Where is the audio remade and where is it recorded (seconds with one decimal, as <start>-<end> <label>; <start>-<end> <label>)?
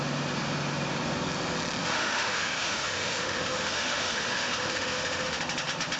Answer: 0.0-1.8 recorded; 1.8-5.4 remade; 5.4-6.0 recorded